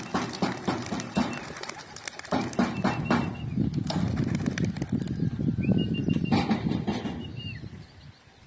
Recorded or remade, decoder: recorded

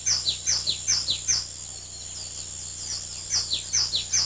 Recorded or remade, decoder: recorded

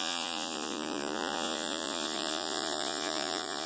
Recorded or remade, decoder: remade, vocoder, Vocos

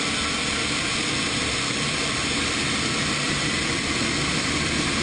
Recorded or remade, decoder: recorded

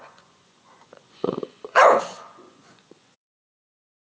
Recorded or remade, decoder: remade, vocoder, Vocos